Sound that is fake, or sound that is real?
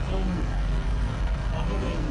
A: fake